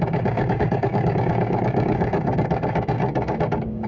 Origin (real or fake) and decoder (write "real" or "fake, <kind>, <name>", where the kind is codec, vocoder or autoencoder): fake, codec, DAC